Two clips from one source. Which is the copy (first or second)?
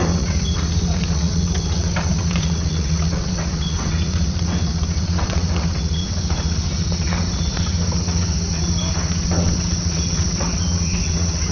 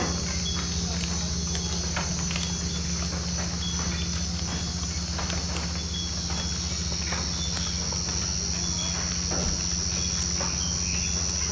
first